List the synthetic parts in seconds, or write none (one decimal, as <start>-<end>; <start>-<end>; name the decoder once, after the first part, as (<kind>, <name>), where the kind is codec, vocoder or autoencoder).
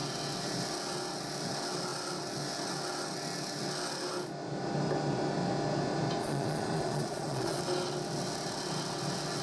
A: 6.2-7.6 (vocoder, Vocos)